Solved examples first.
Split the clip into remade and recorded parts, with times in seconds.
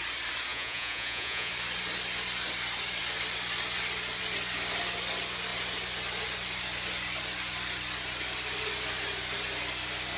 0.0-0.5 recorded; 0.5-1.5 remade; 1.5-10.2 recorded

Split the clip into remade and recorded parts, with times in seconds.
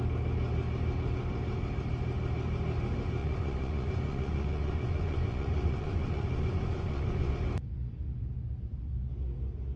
0.0-3.2 recorded; 3.2-7.3 remade; 7.3-9.8 recorded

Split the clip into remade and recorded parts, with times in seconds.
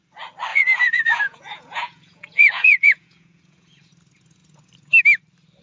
0.0-0.5 recorded; 0.5-3.9 remade; 3.9-5.6 recorded